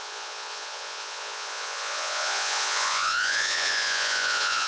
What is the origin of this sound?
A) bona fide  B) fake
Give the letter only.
B